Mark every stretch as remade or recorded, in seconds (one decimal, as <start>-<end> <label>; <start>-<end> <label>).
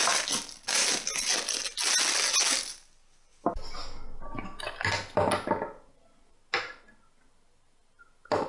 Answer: 0.0-8.5 recorded